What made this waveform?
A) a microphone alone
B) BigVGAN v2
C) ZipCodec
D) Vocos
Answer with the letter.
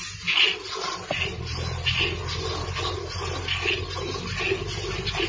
A